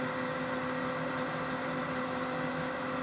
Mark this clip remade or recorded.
recorded